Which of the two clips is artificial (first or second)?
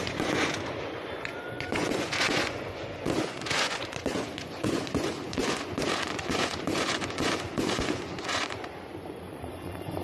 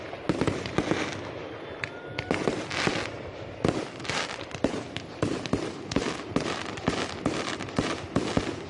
first